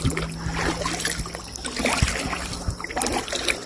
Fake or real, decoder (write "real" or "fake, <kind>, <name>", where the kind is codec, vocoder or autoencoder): real